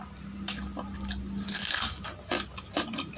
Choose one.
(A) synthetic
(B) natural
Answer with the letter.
B